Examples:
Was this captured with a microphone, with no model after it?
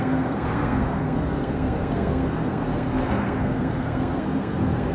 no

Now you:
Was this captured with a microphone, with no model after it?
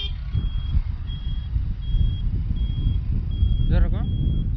yes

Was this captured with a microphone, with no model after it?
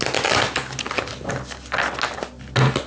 yes